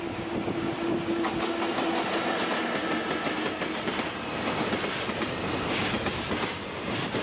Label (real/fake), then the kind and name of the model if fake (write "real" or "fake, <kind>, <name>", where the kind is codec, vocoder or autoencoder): real